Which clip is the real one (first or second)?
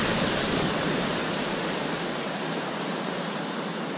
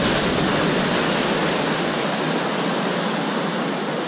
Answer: second